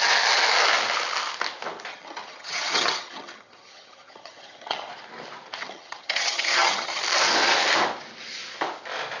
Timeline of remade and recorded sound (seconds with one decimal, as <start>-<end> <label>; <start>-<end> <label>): 0.0-1.9 recorded; 1.9-4.9 remade; 4.9-5.6 recorded; 5.6-7.0 remade; 7.0-9.2 recorded